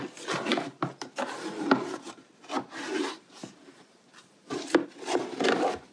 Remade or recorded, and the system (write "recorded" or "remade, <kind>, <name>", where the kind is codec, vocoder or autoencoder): recorded